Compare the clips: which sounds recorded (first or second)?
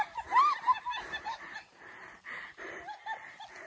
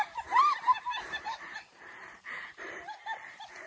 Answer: first